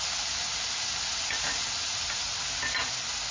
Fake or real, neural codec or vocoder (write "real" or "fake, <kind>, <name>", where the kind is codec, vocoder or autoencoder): real